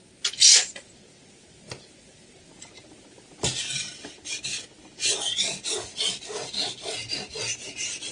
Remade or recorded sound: recorded